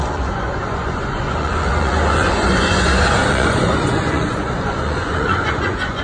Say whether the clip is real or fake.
fake